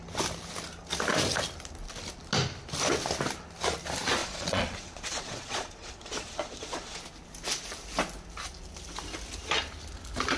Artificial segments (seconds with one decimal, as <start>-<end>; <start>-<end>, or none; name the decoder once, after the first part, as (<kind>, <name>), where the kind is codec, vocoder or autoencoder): 4.2-7.0 (vocoder, Vocos)

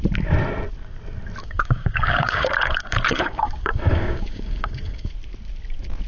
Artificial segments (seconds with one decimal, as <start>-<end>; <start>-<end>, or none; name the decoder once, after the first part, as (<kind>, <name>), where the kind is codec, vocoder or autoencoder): 1.4-5.1 (codec, DAC)

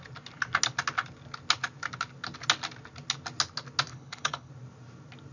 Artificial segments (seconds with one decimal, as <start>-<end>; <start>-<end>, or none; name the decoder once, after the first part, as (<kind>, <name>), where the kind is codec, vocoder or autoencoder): 3.9-4.5 (codec, HILCodec)

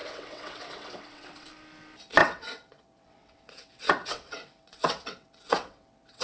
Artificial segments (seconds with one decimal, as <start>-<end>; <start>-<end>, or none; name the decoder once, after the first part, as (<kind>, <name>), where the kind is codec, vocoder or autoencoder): 0.0-1.5 (vocoder, WaveNeXt); 2.2-6.2

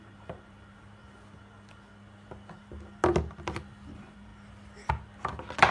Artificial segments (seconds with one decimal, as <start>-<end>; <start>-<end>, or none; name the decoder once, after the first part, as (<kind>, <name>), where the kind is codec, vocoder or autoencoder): 0.0-1.0 (vocoder, BigVGAN v2); 3.9-4.3

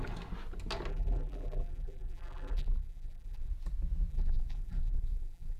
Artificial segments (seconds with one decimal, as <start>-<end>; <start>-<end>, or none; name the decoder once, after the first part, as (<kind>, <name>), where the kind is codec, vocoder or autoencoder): 0.9-3.5 (vocoder, BigVGAN v2); 4.1-5.6

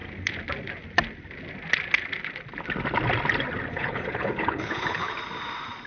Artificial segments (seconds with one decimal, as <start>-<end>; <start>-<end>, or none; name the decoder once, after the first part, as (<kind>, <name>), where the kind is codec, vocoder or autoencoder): 3.7-5.1 (codec, HILCodec)